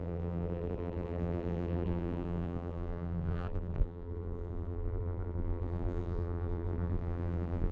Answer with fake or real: fake